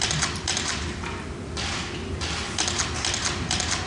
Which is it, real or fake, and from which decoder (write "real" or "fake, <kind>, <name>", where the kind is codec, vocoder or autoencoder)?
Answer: fake, vocoder, BigVGAN v2